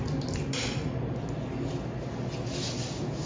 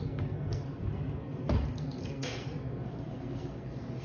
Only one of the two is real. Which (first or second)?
first